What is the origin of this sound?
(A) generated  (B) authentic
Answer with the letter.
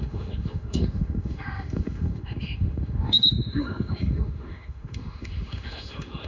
A